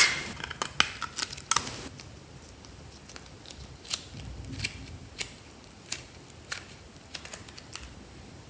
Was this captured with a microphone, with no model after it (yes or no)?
yes